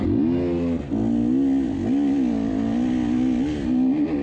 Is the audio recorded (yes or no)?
yes